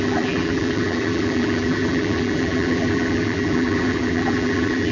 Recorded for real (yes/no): no